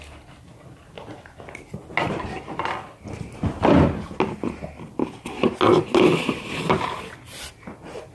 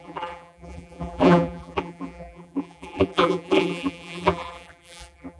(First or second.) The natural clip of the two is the first